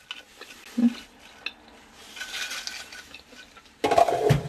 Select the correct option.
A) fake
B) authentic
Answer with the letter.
B